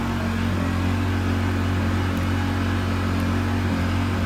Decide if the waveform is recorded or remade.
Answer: recorded